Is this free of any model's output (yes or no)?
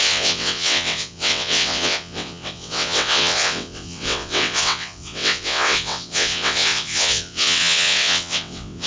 no